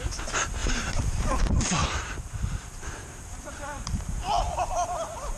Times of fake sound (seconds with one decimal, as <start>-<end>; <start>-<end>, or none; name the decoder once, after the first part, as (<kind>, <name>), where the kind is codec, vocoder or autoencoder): 0.6-1.4 (vocoder, BigVGAN v2); 1.8-4.2